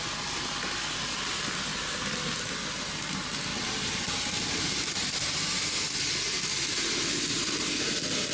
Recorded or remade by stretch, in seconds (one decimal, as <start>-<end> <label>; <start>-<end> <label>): 0.0-3.5 recorded; 3.5-5.9 remade; 5.9-8.3 recorded